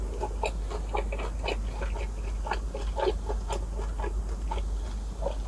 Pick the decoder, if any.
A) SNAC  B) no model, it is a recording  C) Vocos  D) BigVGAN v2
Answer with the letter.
B